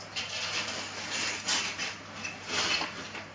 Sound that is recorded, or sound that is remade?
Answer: recorded